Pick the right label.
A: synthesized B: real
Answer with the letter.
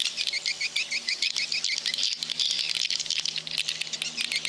B